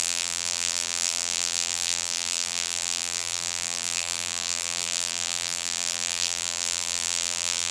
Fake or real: fake